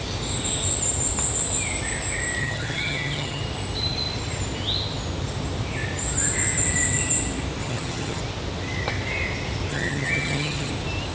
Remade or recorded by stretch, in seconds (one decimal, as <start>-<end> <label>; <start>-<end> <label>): 0.0-2.4 recorded; 2.4-3.4 remade; 3.4-7.6 recorded; 7.6-8.2 remade; 8.2-9.7 recorded; 9.7-10.7 remade; 10.7-11.1 recorded